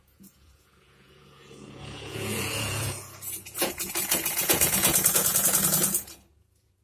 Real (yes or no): no